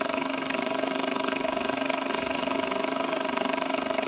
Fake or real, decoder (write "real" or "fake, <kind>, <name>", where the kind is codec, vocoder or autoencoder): fake, codec, SNAC